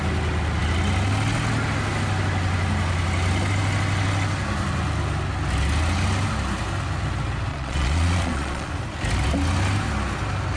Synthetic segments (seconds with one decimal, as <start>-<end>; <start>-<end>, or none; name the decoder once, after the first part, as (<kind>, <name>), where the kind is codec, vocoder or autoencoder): 7.5-8.7 (vocoder, Vocos)